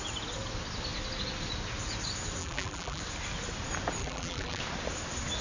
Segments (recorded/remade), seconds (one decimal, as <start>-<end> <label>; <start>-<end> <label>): 0.0-2.4 recorded; 2.4-3.0 remade; 3.0-4.0 recorded; 4.0-4.6 remade; 4.6-5.4 recorded